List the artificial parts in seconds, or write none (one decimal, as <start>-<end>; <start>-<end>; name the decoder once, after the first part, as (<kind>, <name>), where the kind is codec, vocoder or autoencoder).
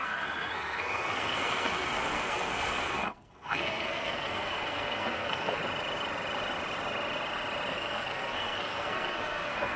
0.0-5.6 (codec, SNAC); 7.7-9.8